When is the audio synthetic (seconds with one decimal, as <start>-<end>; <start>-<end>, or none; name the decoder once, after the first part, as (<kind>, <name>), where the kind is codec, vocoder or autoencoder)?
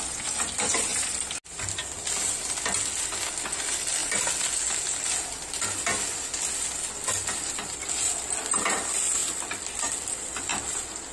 none